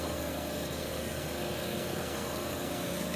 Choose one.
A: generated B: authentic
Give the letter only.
A